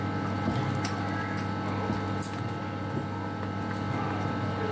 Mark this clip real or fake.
real